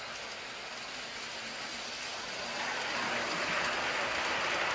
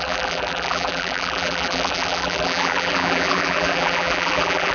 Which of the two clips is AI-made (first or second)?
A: second